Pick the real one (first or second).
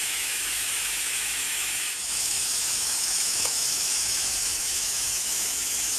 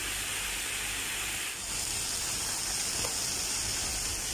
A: second